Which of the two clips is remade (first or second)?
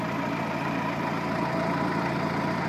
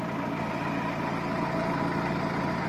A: first